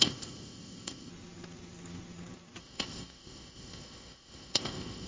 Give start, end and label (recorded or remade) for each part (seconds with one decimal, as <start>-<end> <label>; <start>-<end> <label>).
0.0-1.1 remade; 1.1-2.6 recorded; 2.6-5.1 remade